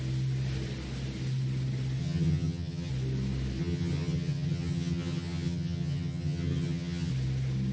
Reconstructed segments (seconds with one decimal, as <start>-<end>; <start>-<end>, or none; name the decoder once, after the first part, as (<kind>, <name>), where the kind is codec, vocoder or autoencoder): 2.0-2.9 (vocoder, HiFi-GAN); 3.6-7.1